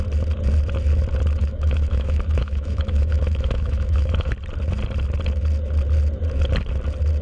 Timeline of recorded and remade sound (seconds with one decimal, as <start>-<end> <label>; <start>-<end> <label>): 0.0-1.4 recorded; 1.4-4.3 remade; 4.3-7.2 recorded